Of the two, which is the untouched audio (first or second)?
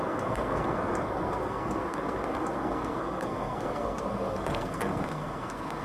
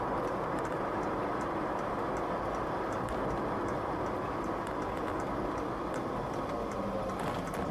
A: second